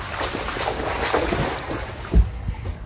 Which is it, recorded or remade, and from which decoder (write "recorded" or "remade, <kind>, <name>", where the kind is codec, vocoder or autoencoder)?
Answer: recorded